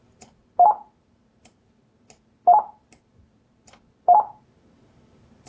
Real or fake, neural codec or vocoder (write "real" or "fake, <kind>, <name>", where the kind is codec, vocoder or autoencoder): real